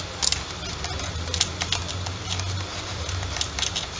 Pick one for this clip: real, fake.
real